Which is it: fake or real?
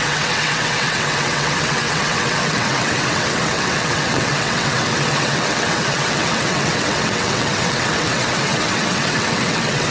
fake